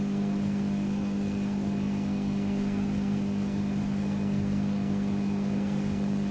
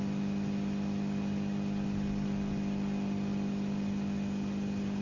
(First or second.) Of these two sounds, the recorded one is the second